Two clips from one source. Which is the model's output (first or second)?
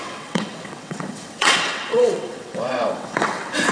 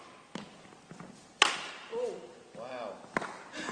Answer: first